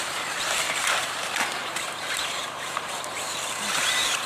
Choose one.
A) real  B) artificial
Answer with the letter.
B